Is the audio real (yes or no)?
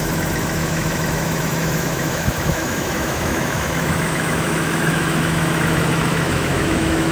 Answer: no